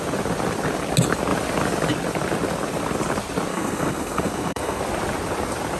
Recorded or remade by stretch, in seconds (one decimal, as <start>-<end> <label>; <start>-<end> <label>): 0.0-3.5 recorded; 3.5-4.8 remade; 4.8-5.8 recorded

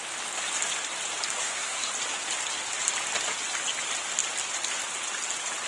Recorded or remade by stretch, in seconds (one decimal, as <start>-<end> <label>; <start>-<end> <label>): 0.0-1.4 recorded; 1.4-1.9 remade; 1.9-5.7 recorded

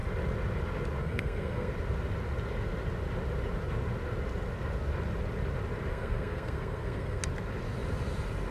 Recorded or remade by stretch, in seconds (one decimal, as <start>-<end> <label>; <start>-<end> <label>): 0.0-1.0 recorded; 1.0-1.7 remade; 1.7-5.9 recorded; 5.9-7.2 remade; 7.2-8.5 recorded

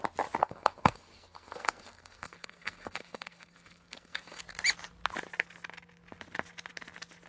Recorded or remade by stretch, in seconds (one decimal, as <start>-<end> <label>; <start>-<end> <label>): 0.0-0.4 recorded; 0.4-4.4 remade; 4.4-7.3 recorded